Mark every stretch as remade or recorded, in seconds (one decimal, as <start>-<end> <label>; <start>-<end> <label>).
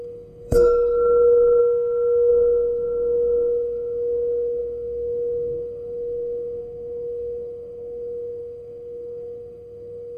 0.0-1.6 remade; 1.6-2.3 recorded; 2.3-10.2 remade